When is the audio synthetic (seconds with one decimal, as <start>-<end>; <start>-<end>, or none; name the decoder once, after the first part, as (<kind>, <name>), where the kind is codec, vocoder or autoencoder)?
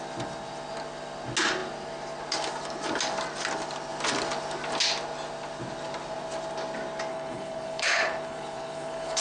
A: 7.1-9.2 (codec, HILCodec)